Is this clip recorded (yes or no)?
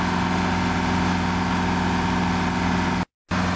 yes